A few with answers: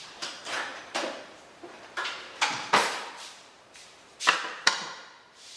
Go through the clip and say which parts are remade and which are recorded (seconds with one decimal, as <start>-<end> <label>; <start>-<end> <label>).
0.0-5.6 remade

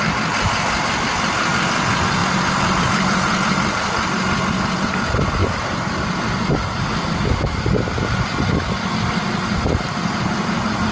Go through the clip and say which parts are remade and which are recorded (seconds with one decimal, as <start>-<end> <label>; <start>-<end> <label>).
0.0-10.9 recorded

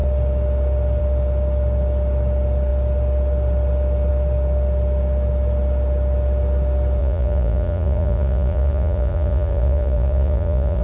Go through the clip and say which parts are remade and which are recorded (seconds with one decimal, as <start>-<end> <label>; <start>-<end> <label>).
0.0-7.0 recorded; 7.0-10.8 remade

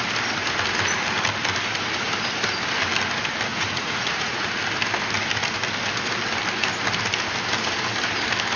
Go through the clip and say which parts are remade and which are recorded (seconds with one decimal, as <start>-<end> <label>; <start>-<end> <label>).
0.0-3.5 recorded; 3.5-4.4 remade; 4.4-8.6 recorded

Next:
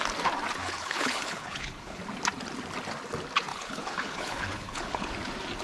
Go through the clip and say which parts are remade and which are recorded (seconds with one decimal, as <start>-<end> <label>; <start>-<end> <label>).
0.0-0.6 recorded; 0.6-2.0 remade; 2.0-3.5 recorded; 3.5-5.1 remade; 5.1-5.6 recorded

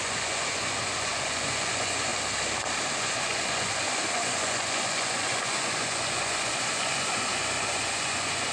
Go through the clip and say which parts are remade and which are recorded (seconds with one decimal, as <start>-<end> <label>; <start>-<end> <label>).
0.0-2.1 remade; 2.1-3.0 recorded; 3.0-8.5 remade